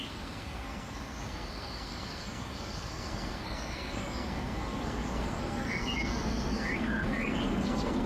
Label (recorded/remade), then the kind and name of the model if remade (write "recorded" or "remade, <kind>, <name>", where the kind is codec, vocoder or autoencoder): remade, codec, SNAC